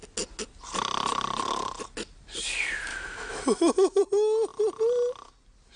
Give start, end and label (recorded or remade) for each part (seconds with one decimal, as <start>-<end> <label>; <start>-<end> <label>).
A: 0.0-2.9 recorded; 2.9-4.0 remade; 4.0-5.8 recorded